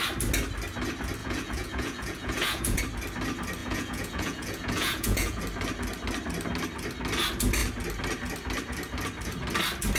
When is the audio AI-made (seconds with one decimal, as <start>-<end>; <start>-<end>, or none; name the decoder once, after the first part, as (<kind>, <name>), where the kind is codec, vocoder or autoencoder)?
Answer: 1.2-2.8 (vocoder, Vocos); 3.6-5.4